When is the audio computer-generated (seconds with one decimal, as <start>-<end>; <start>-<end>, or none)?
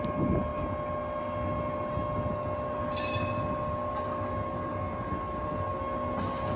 none